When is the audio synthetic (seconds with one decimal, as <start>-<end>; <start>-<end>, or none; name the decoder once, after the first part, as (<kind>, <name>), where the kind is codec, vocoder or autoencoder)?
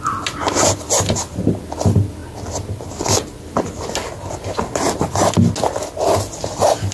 none